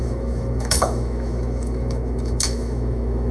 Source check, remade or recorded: remade